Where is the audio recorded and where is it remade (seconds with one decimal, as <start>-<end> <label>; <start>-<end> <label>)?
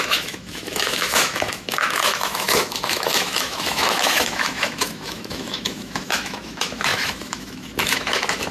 0.0-8.5 remade